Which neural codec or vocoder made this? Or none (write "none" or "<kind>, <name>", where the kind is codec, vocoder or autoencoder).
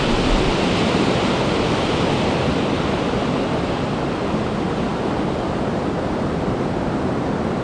none